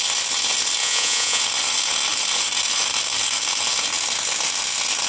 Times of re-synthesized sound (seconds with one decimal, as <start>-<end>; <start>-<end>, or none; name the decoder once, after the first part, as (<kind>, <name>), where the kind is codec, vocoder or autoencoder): 0.8-1.4 (vocoder, Vocos)

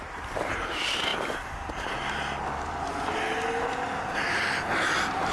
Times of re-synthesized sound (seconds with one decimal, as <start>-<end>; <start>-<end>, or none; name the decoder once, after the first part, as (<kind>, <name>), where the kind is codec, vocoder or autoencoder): 0.0-1.1 (vocoder, BigVGAN v2); 4.3-5.3

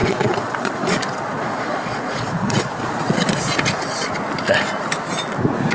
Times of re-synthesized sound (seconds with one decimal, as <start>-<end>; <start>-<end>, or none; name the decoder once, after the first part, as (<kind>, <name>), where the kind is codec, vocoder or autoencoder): 0.0-3.4 (vocoder, Vocos)

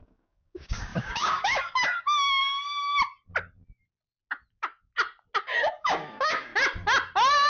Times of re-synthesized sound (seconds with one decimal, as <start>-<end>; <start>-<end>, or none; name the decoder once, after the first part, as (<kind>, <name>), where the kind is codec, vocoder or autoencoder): 0.0-2.4 (codec, DAC); 5.4-6.5

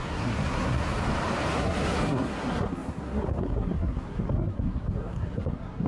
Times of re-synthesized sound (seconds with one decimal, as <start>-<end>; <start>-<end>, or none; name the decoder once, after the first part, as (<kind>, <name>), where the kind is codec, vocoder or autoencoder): 0.0-0.9 (codec, SNAC); 1.5-5.9

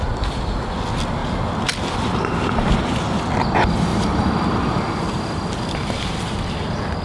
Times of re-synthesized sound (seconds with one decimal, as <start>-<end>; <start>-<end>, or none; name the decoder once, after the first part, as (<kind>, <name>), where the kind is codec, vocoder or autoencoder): 3.9-4.5 (vocoder, BigVGAN v2)